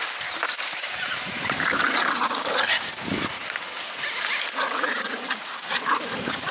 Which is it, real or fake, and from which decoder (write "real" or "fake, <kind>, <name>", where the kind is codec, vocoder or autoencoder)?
real